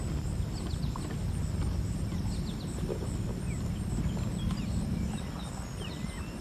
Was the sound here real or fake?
real